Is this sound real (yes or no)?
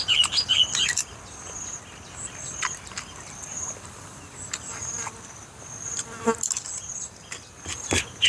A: yes